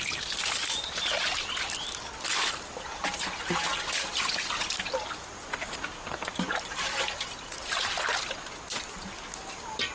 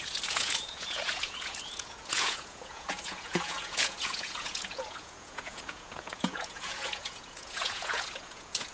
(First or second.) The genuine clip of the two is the first